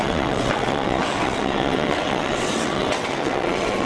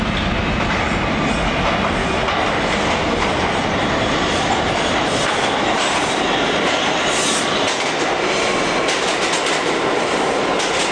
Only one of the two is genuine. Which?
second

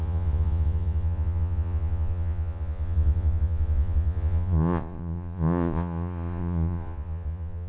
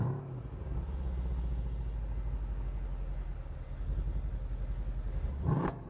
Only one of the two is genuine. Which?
second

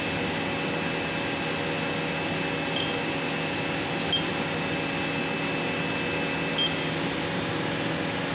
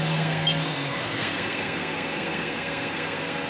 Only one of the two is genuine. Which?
first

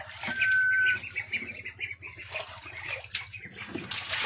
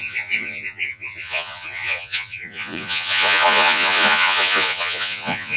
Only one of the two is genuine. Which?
first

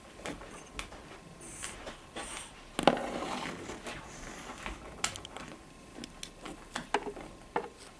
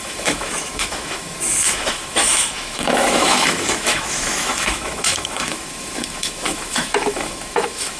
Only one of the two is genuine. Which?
first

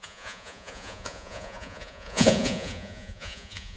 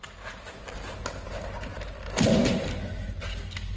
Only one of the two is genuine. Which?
second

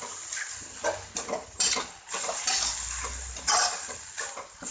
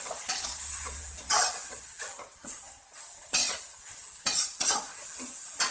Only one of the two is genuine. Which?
first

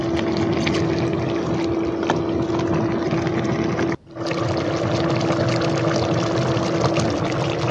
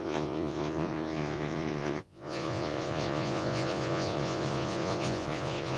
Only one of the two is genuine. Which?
first